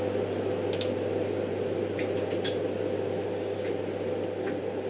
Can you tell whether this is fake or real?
real